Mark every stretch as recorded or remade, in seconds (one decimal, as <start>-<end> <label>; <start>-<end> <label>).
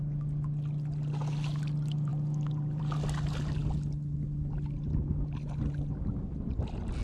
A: 0.0-7.0 recorded